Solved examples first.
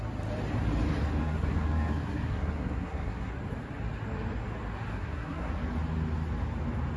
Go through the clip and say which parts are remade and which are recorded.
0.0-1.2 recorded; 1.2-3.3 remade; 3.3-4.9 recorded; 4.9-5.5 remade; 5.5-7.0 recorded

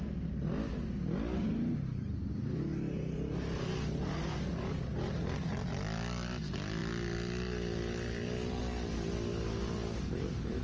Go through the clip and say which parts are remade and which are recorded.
0.0-10.6 recorded

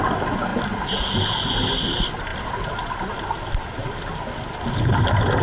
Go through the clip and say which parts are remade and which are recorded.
0.0-5.4 recorded